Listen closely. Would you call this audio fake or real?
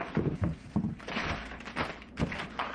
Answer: fake